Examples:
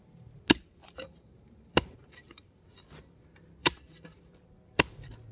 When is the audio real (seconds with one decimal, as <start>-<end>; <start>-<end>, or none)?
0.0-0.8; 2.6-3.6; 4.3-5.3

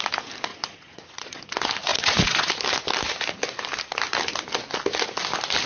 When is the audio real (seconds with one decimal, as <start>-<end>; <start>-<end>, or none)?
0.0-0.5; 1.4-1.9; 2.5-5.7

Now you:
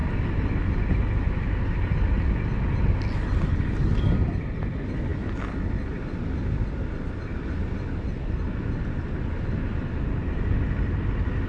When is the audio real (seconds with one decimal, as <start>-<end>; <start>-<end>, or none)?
0.0-11.5

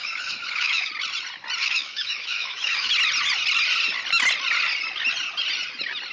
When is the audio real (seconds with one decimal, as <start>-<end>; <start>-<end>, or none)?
0.9-1.6; 2.9-6.1

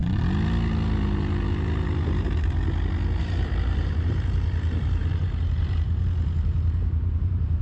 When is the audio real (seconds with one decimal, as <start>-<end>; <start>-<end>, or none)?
0.0-3.2

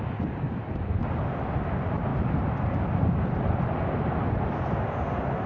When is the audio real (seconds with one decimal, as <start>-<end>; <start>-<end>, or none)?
0.0-5.5

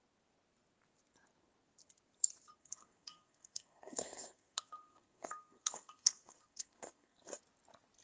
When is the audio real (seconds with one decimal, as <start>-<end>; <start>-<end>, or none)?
0.0-2.6; 7.4-8.0

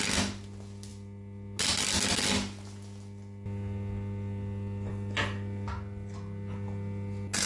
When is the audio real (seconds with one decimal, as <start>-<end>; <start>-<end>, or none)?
0.0-7.5